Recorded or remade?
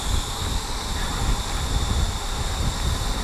recorded